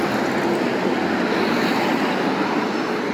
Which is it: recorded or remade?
recorded